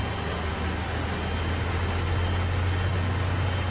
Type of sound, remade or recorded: recorded